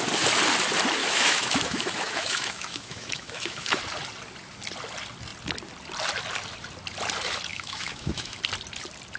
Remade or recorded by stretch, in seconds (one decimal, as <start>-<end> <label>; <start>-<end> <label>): 0.0-1.0 recorded; 1.0-3.8 remade; 3.8-7.5 recorded; 7.5-8.4 remade; 8.4-9.2 recorded